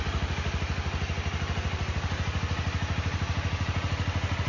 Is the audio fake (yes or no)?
no